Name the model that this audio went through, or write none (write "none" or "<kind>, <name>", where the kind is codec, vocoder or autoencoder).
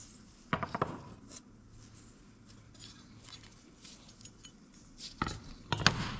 none